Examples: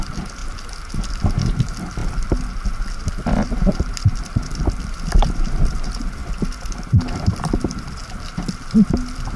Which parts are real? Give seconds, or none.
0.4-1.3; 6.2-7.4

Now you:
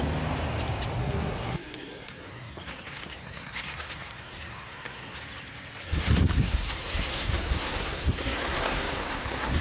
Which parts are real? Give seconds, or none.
0.0-1.0; 5.2-5.8

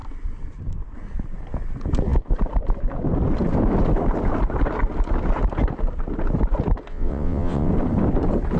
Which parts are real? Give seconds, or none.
0.0-6.9; 7.7-8.6

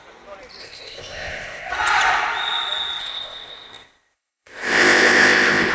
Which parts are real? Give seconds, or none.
0.0-0.6; 1.7-3.0

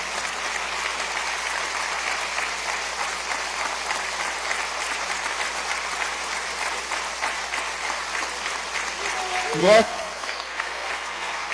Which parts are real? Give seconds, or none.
0.0-9.6

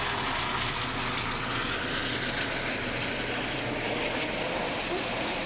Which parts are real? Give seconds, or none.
0.0-5.5

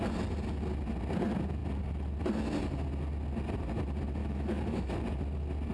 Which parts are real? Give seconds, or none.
0.0-4.2; 4.9-5.7

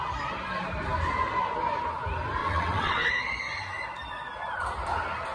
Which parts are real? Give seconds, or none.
0.0-2.4; 3.1-5.3